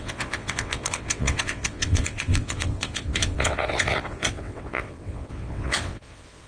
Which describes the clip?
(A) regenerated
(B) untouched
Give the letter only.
A